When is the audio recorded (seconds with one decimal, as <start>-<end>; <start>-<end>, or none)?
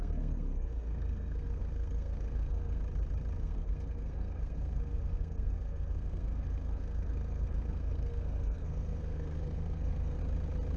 2.8-3.4; 10.2-10.8